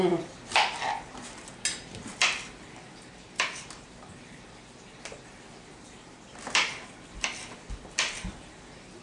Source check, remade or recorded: recorded